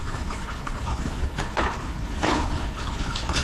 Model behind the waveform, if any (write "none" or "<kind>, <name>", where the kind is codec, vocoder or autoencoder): codec, HILCodec